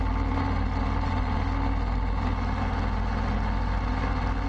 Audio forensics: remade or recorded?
recorded